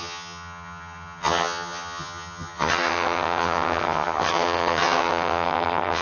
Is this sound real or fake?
fake